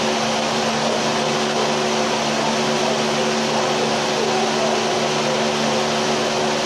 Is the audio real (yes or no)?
yes